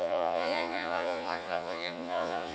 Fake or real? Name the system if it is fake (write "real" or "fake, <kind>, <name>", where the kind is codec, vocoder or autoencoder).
fake, vocoder, Vocos